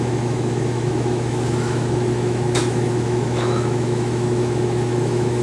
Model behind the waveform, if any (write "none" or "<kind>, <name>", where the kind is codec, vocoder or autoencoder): autoencoder, DAC-VAE